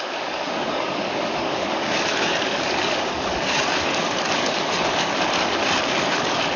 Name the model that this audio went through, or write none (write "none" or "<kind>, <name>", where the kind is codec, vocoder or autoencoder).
codec, DAC